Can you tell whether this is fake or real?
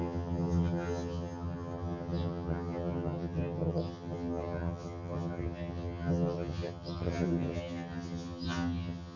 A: fake